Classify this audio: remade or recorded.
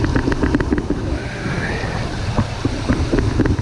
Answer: recorded